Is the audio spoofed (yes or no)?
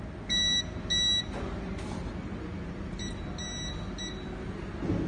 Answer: no